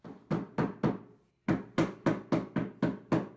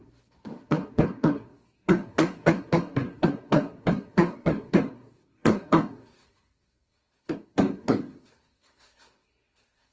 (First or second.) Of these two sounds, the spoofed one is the second